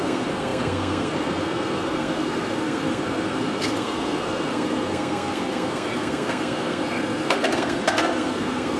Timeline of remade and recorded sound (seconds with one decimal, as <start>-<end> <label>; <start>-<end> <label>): 0.0-8.8 remade